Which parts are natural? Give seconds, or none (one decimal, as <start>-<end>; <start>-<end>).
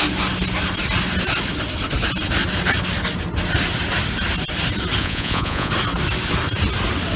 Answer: 0.0-5.0; 5.7-7.2